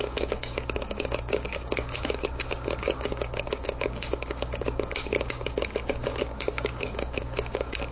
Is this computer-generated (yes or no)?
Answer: yes